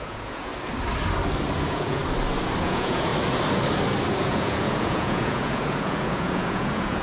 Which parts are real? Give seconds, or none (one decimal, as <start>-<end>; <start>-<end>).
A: 0.5-1.6; 2.0-2.6; 3.1-4.2